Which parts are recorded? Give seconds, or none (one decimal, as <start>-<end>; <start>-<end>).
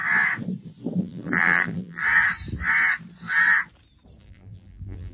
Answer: 0.0-1.0; 2.0-4.2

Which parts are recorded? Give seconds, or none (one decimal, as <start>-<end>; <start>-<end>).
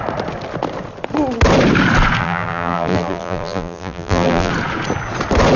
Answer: 0.0-2.2; 4.5-5.6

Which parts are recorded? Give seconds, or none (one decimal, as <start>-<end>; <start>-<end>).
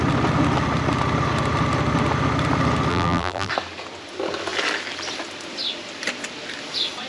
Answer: 0.0-2.9; 3.5-7.1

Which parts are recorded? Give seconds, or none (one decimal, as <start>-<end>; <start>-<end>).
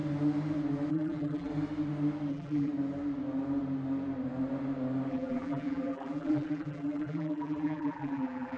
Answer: 0.0-0.9; 1.5-2.3; 2.7-5.1